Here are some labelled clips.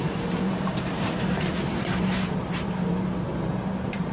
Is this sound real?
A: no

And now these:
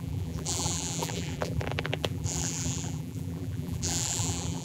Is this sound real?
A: no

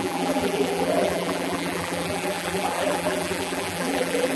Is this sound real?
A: no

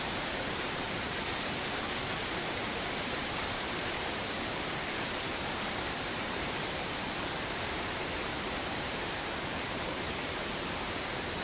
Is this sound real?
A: no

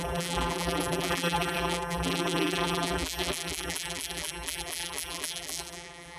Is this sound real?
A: no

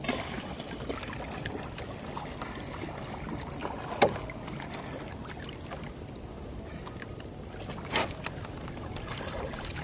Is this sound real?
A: yes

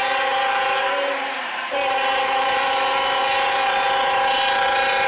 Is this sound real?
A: no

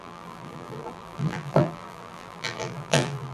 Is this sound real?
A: no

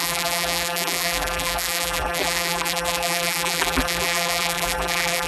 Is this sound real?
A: no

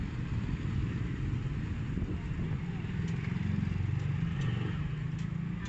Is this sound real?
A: yes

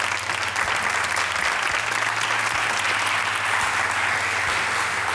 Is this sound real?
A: yes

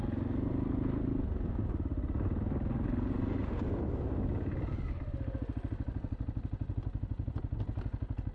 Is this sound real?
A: yes